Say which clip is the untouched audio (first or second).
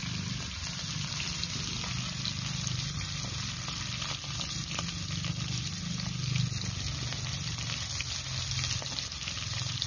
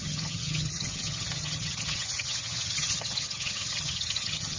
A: first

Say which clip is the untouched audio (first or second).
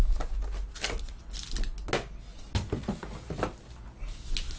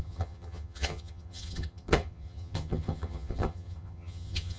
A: first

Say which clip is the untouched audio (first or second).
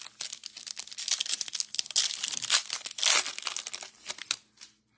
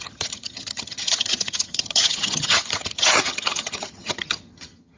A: first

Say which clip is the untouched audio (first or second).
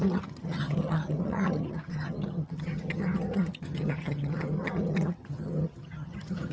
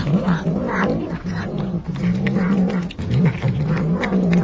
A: second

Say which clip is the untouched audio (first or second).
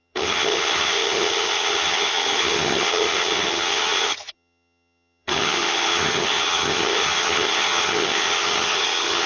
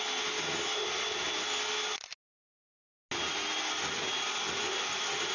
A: second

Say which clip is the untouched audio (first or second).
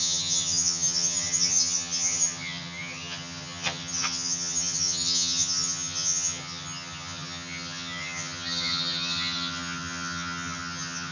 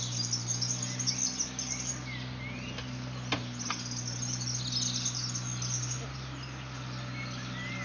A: second